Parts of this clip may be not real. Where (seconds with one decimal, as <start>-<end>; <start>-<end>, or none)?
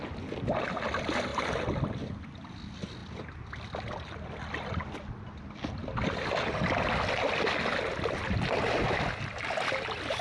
none